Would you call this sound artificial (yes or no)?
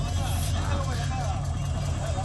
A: no